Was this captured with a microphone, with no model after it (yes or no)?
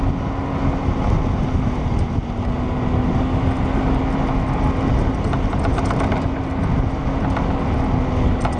yes